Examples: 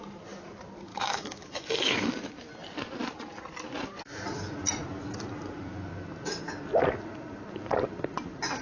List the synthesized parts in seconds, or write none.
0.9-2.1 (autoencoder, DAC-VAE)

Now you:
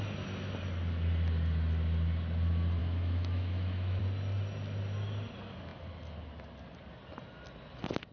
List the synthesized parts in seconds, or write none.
2.8-4.0 (autoencoder, DAC-VAE)

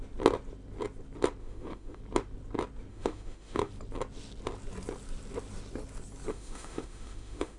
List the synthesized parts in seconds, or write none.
1.4-2.0 (autoencoder, DAC-VAE); 2.9-3.7; 6.3-7.6

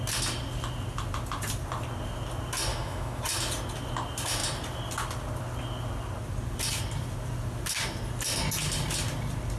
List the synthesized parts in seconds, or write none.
2.7-3.2 (autoencoder, DAC-VAE)

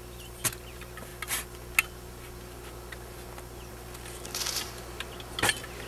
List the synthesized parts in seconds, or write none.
none

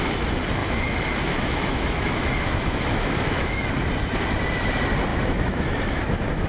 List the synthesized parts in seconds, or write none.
0.6-3.6 (autoencoder, DAC-VAE); 5.1-6.5

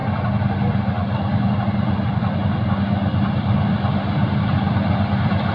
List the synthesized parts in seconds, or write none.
none

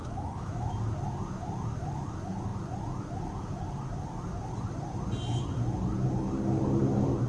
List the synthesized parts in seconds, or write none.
0.0-0.7 (autoencoder, DAC-VAE)